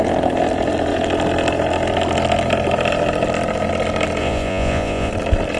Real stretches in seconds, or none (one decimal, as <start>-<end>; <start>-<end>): 0.0-4.2; 5.1-5.6